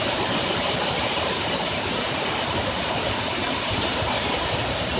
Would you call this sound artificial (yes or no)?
yes